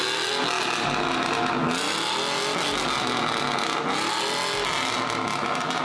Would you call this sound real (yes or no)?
yes